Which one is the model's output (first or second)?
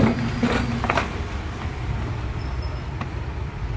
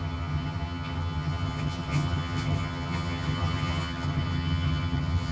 second